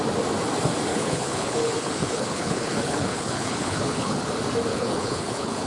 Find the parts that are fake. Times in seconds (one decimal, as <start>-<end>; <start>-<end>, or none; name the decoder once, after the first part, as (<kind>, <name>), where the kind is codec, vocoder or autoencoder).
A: 0.9-4.3 (codec, HILCodec); 4.7-5.7